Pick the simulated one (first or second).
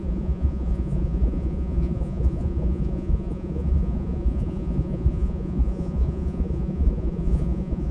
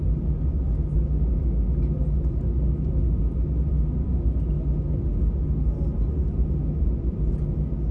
first